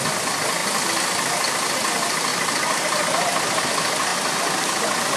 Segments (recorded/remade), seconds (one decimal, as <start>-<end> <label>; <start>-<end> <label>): 0.0-2.3 recorded; 2.3-3.6 remade; 3.6-5.2 recorded